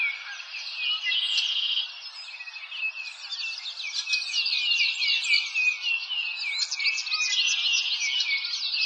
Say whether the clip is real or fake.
real